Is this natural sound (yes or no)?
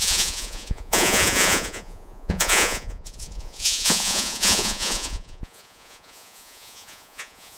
no